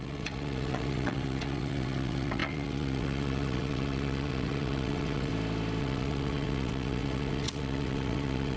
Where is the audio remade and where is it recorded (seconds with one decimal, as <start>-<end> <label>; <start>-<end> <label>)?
0.0-5.3 remade; 5.3-5.8 recorded; 5.8-8.6 remade